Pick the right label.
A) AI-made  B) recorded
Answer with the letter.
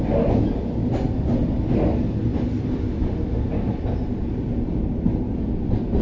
B